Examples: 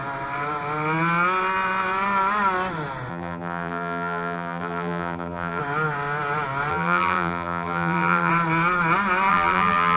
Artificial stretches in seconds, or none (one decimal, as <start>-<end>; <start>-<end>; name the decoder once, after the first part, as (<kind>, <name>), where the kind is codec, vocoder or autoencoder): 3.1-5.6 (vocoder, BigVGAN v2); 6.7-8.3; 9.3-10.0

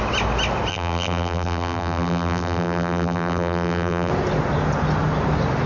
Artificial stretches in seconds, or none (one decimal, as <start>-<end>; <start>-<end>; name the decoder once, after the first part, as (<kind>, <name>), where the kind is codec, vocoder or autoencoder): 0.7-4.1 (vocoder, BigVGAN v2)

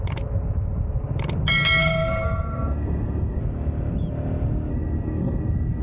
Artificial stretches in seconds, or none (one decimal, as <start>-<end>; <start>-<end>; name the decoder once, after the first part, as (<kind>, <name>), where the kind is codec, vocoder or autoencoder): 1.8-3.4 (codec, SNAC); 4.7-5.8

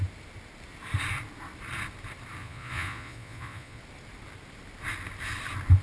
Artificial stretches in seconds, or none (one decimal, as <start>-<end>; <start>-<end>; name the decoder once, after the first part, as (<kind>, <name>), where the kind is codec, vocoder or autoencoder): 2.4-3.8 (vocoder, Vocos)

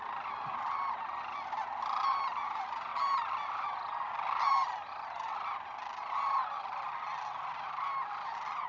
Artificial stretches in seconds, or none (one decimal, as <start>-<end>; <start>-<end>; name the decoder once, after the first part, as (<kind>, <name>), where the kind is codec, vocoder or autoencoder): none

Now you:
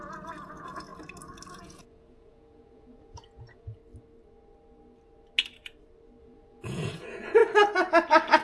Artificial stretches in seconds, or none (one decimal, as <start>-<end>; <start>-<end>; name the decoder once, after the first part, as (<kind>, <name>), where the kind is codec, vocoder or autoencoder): 0.0-0.9 (vocoder, Vocos); 1.5-3.8; 6.2-7.4

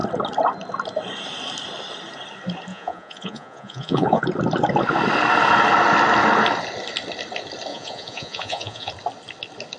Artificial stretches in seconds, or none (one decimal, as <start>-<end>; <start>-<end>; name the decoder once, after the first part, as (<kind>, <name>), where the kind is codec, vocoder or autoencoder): 2.7-4.2 (vocoder, Vocos); 7.7-8.9